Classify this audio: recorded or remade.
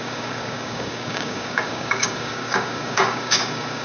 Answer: remade